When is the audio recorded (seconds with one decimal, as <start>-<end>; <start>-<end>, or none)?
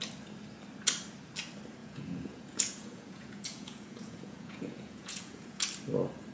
0.0-1.8; 5.6-6.3